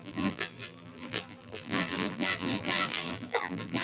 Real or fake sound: fake